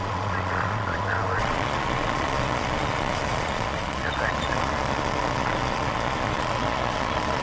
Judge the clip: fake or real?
fake